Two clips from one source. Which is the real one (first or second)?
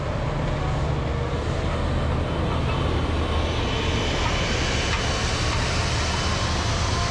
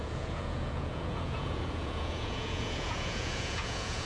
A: first